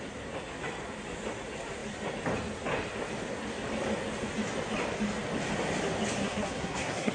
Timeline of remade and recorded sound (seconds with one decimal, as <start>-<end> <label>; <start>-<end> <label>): 0.0-6.2 recorded; 6.2-7.1 remade